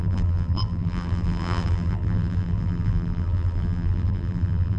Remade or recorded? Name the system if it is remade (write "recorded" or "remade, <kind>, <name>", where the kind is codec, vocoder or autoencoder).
remade, vocoder, BigVGAN v2